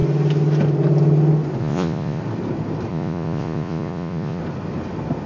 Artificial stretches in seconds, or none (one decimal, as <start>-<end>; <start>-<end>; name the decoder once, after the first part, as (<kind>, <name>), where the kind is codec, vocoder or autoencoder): 1.6-2.2 (vocoder, Vocos); 2.9-4.4